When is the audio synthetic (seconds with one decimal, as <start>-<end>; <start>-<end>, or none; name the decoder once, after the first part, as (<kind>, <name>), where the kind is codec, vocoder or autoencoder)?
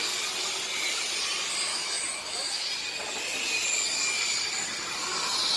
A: 1.7-2.7 (autoencoder, DAC-VAE)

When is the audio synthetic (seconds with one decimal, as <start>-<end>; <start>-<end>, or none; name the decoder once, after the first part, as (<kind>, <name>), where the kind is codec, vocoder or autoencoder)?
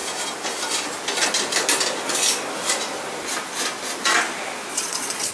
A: 4.7-5.3 (vocoder, Vocos)